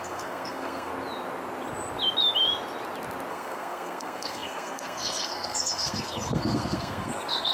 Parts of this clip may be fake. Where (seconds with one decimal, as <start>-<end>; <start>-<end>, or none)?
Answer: 0.0-0.9; 3.3-7.5